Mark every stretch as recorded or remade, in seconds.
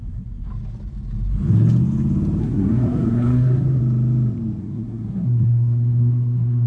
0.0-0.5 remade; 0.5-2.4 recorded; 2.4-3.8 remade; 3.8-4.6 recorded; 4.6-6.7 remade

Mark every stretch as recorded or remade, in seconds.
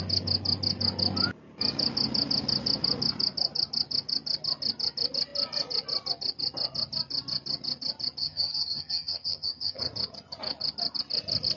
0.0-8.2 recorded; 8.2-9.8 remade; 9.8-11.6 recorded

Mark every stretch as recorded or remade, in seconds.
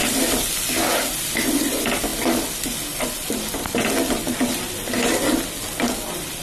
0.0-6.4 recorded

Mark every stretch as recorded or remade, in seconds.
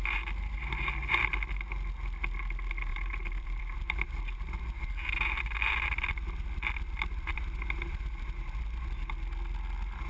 0.0-2.9 recorded; 2.9-3.6 remade; 3.6-10.1 recorded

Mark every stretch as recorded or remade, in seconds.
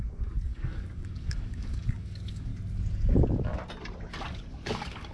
0.0-2.5 remade; 2.5-4.2 recorded; 4.2-5.1 remade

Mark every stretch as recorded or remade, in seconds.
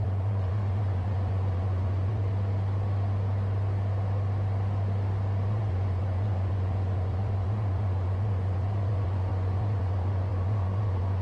0.0-2.3 remade; 2.3-5.5 recorded; 5.5-11.2 remade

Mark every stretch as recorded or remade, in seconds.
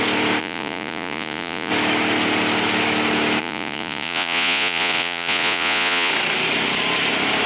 0.0-0.4 recorded; 0.4-1.7 remade; 1.7-3.4 recorded; 3.4-6.1 remade; 6.1-7.5 recorded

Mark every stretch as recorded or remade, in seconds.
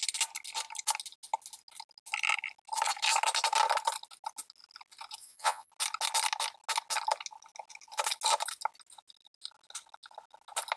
0.0-5.2 recorded; 5.2-5.7 remade; 5.7-10.8 recorded